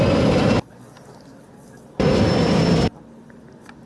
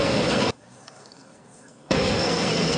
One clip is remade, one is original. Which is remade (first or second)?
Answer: second